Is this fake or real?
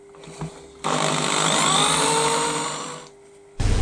real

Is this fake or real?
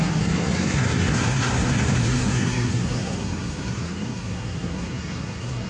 fake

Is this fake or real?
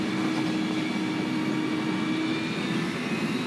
real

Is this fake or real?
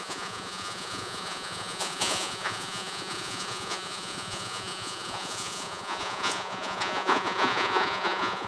fake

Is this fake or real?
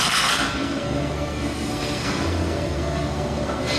fake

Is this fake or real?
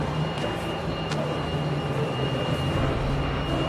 fake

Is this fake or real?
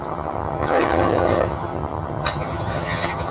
fake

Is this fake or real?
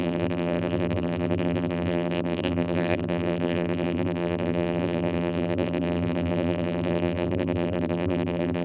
fake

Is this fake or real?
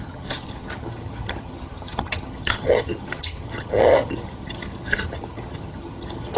fake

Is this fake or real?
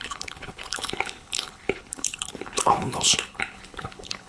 fake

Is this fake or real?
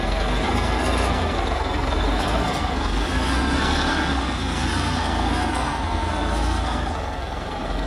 fake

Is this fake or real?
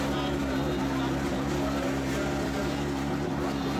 real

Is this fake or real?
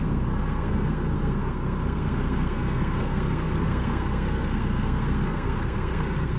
fake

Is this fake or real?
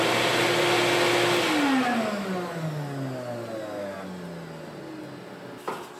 real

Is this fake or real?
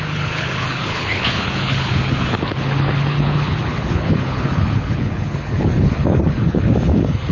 fake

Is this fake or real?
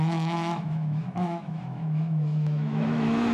fake